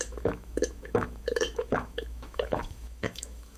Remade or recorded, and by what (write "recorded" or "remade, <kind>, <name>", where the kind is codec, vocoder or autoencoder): remade, autoencoder, DAC-VAE